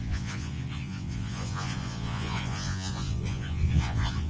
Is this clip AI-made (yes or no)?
yes